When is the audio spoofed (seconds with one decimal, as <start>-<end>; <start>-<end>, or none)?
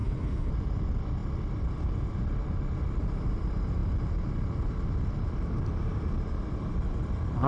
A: 0.0-0.5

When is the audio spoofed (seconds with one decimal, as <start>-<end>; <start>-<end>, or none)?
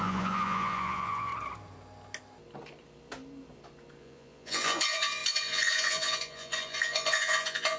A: 0.0-1.3; 4.0-7.8